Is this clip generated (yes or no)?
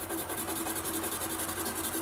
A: no